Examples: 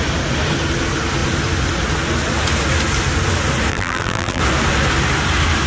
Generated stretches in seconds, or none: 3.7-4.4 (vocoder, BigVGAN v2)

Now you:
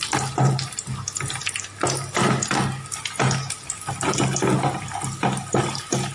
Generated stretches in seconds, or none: 0.0-0.9 (vocoder, BigVGAN v2); 4.6-6.1

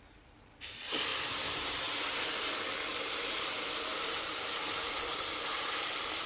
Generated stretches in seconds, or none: 0.0-1.1 (vocoder, BigVGAN v2); 2.2-6.3